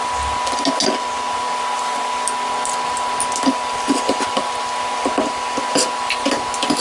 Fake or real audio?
real